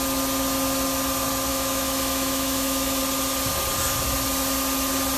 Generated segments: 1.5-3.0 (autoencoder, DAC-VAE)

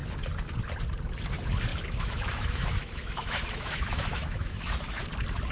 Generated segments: 1.7-5.0 (autoencoder, DAC-VAE)

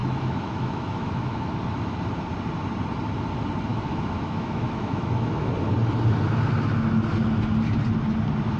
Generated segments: 0.0-1.6 (autoencoder, DAC-VAE); 3.7-5.5

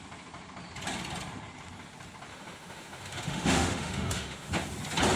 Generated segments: 2.3-4.5 (autoencoder, DAC-VAE)

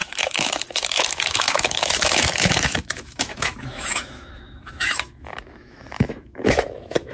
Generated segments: 0.0-7.1 (autoencoder, DAC-VAE)

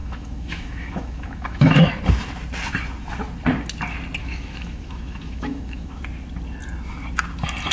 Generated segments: 0.0-1.9 (autoencoder, DAC-VAE); 4.2-6.0

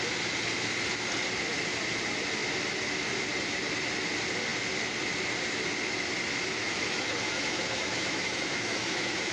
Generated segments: 6.6-9.3 (autoencoder, DAC-VAE)